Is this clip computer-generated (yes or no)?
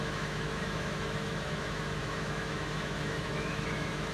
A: yes